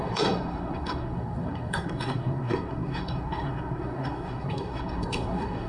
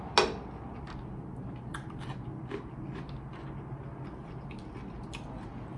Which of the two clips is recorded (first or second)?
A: second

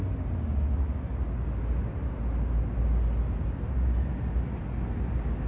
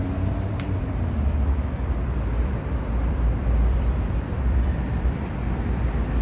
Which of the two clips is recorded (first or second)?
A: first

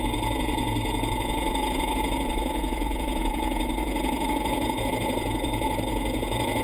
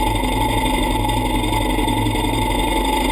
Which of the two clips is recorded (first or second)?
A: second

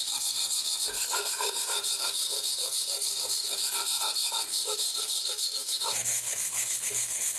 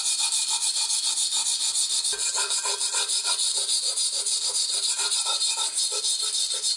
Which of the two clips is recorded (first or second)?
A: second